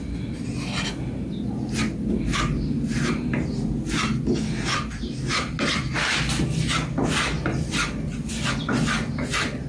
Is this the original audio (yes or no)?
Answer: yes